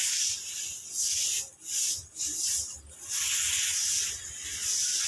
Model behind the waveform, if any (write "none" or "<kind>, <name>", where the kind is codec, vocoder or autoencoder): none